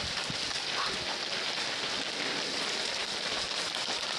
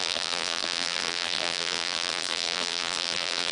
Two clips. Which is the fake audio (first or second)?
second